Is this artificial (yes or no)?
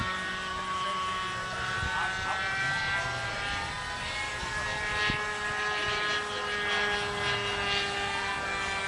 no